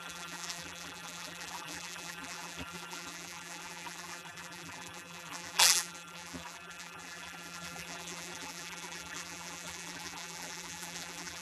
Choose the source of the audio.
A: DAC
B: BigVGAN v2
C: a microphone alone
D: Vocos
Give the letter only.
B